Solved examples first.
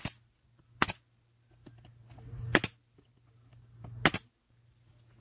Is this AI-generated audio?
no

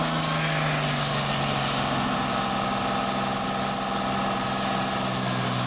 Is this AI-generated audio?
no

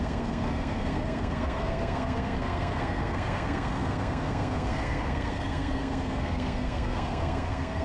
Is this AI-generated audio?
yes